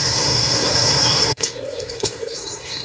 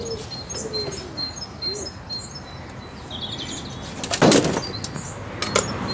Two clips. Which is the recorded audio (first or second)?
second